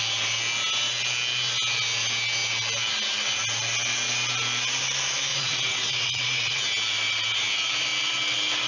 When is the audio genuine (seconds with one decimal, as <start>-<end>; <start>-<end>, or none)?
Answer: 0.0-5.3; 6.6-8.7